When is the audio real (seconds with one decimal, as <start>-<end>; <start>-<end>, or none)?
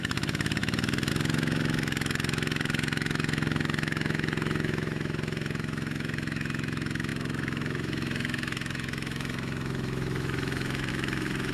none